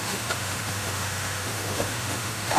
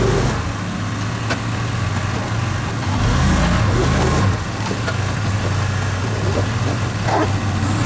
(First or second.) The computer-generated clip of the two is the first